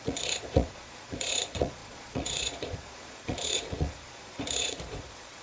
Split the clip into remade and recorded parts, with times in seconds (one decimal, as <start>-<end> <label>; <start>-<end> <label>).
0.0-5.4 remade